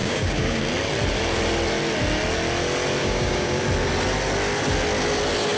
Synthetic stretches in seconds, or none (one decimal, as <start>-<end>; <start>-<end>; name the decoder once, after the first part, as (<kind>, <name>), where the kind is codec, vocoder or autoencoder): 0.0-0.6 (codec, DAC); 3.0-3.6